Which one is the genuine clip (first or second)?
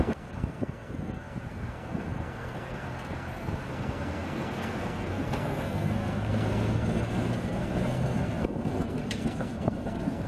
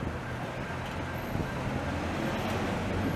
second